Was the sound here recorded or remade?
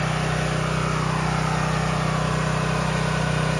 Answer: recorded